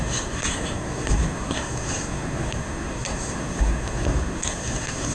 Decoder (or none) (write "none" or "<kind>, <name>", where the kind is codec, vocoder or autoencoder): codec, SNAC